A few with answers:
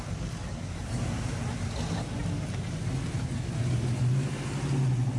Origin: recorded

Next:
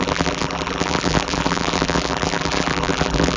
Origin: remade